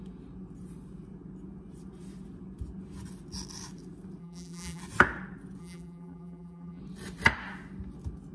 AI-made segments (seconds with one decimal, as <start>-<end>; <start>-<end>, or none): 4.2-4.8; 5.6-6.8